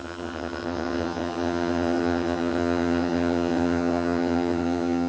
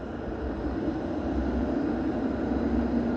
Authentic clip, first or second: second